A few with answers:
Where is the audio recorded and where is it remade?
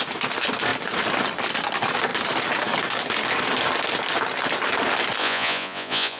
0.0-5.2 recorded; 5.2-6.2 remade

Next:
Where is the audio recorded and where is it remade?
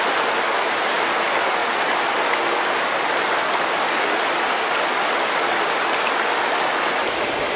0.0-7.6 recorded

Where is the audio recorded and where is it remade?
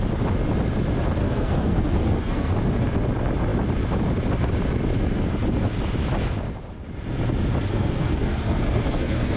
0.0-1.2 recorded; 1.2-2.5 remade; 2.5-7.7 recorded; 7.7-9.4 remade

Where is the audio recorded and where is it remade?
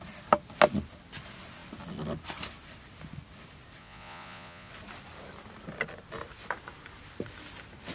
0.0-3.8 recorded; 3.8-4.7 remade; 4.7-7.9 recorded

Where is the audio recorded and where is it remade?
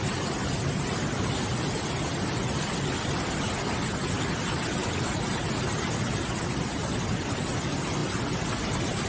0.0-9.1 recorded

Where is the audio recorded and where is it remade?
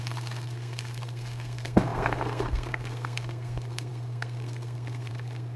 0.0-5.6 remade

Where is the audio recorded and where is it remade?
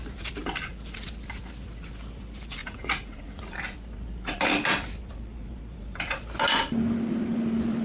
0.0-2.6 recorded; 2.6-3.4 remade; 3.4-7.8 recorded